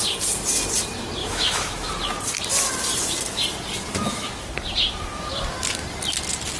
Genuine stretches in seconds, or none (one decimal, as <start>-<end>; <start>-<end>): 0.0-1.2; 1.9-3.9; 4.5-6.6